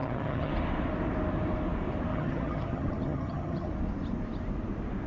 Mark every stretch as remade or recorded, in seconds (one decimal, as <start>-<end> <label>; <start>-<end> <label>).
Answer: 0.0-0.5 remade; 0.5-2.1 recorded; 2.1-3.7 remade; 3.7-5.1 recorded